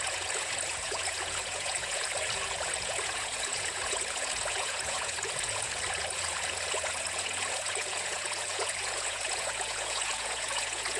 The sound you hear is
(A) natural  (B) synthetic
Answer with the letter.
B